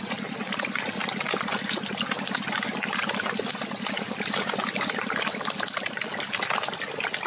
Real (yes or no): yes